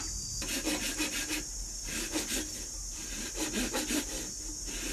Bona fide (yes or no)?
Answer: yes